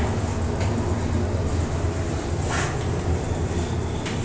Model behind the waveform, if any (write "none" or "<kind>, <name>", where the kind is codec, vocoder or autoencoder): none